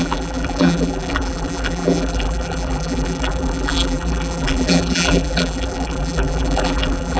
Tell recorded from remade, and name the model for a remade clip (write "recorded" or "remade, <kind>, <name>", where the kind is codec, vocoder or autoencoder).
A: remade, vocoder, BigVGAN v2